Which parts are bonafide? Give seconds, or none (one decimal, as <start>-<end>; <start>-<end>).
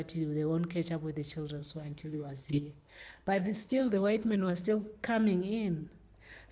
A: 0.0-1.6; 4.9-6.5